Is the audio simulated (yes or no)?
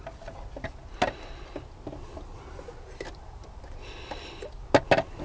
no